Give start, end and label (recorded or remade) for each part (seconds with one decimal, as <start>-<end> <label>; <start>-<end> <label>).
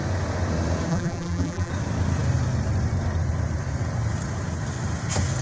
0.0-0.9 recorded; 0.9-1.7 remade; 1.7-5.4 recorded